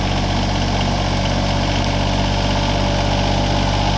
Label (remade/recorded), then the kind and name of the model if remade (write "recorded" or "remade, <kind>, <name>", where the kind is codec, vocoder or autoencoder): recorded